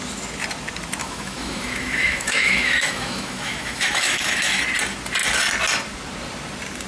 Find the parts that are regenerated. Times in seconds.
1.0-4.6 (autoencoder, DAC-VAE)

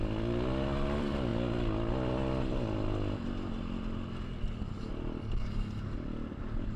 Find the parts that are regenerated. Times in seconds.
none

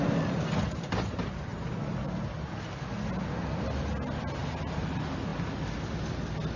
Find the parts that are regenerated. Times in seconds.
none

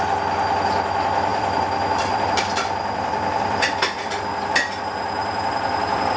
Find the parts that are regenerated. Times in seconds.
1.3-4.4 (vocoder, BigVGAN v2); 5.2-6.2

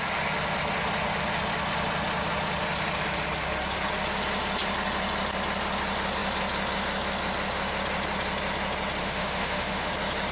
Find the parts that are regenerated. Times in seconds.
9.0-9.9 (autoencoder, DAC-VAE)

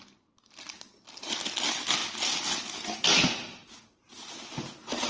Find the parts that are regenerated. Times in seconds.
none